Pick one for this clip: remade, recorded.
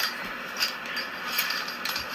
recorded